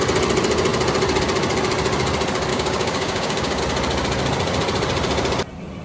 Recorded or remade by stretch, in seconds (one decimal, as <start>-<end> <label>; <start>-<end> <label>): 0.0-2.5 recorded; 2.5-3.6 remade; 3.6-5.8 recorded